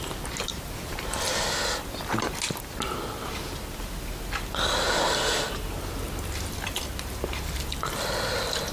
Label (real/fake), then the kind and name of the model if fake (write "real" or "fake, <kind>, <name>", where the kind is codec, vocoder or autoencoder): real